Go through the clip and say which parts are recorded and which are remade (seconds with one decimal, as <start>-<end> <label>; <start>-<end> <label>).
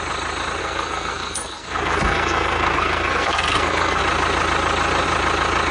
0.0-0.6 recorded; 0.6-4.0 remade; 4.0-5.7 recorded